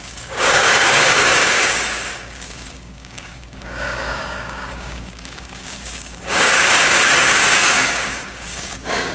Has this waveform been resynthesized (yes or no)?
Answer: yes